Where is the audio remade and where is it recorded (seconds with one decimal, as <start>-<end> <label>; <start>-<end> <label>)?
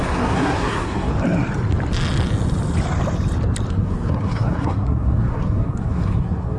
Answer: 0.0-1.1 remade; 1.1-3.7 recorded; 3.7-6.6 remade